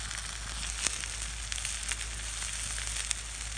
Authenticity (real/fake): real